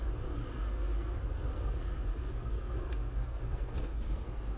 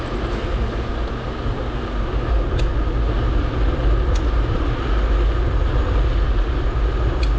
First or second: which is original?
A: second